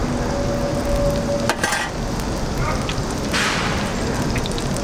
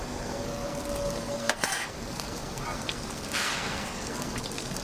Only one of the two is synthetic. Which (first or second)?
second